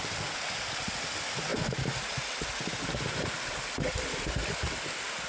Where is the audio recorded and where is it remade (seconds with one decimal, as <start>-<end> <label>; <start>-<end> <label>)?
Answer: 0.0-5.3 recorded